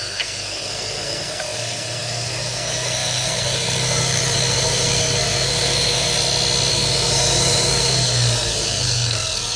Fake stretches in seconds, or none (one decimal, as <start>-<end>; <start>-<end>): 0.0-6.1; 6.7-9.6